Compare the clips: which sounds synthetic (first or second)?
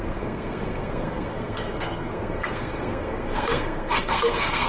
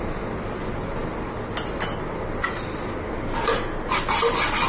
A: first